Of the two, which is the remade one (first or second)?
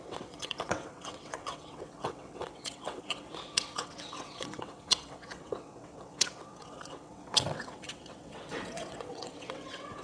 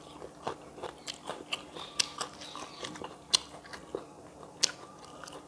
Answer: first